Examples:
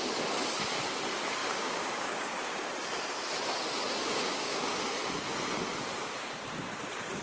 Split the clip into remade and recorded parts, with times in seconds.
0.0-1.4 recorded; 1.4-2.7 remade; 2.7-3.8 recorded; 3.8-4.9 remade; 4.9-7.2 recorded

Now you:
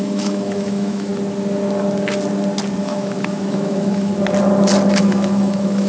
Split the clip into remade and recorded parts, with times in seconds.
0.0-1.1 remade; 1.1-2.8 recorded; 2.8-4.1 remade; 4.1-5.0 recorded; 5.0-5.9 remade

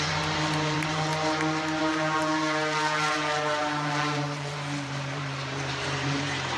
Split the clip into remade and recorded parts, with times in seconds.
0.0-1.1 remade; 1.1-1.8 recorded; 1.8-6.6 remade

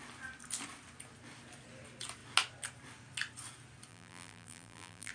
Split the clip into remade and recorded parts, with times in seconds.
0.0-3.9 recorded; 3.9-5.1 remade

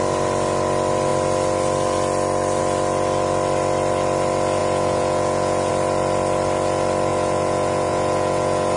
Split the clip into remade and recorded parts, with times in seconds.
0.0-4.6 recorded; 4.6-5.7 remade; 5.7-7.1 recorded; 7.1-8.8 remade

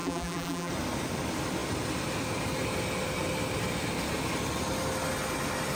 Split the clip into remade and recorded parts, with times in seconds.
0.0-0.7 remade; 0.7-5.8 recorded